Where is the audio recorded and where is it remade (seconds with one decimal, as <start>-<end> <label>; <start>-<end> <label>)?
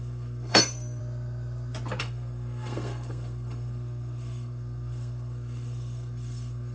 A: 0.0-1.0 remade; 1.0-2.0 recorded; 2.0-6.7 remade